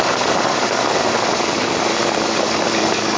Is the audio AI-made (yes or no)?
yes